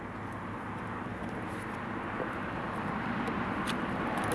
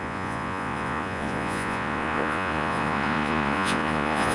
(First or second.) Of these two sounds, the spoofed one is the second